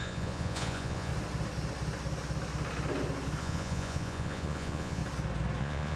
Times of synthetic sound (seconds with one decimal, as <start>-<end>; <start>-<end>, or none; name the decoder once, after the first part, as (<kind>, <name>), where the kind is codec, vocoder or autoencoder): 0.0-1.1 (vocoder, Vocos); 3.4-5.0; 5.6-6.0